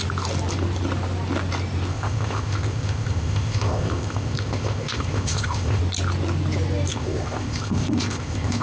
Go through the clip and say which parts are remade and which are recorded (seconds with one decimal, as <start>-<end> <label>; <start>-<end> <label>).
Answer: 0.0-1.9 recorded; 1.9-5.8 remade; 5.8-6.9 recorded; 6.9-8.6 remade